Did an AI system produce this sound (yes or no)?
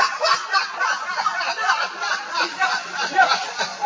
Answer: yes